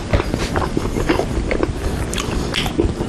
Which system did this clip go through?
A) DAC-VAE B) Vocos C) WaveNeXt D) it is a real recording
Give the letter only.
D